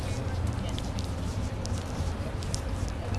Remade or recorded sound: recorded